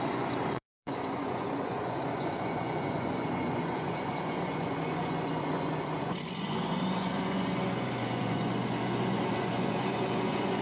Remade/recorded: remade